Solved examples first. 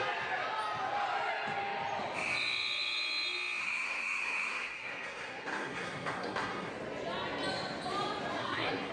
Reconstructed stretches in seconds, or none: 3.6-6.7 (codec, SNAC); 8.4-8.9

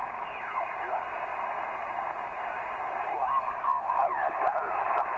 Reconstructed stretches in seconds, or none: 1.3-3.4 (vocoder, BigVGAN v2)

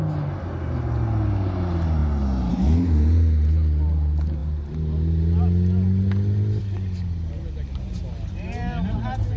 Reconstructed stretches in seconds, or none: none

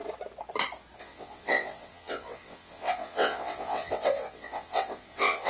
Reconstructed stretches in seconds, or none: 1.0-5.5 (vocoder, WaveNeXt)

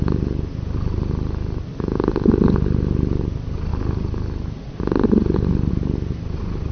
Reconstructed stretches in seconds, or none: none

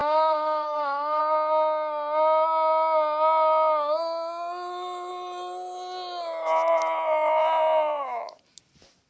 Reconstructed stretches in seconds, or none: 0.0-1.2 (autoencoder, DAC-VAE)

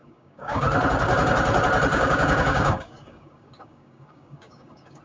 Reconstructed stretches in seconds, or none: 0.0-0.6 (codec, DAC); 1.9-5.0

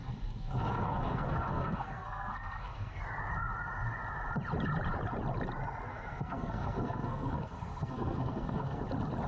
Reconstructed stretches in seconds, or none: 0.0-3.0 (codec, SNAC); 5.9-8.8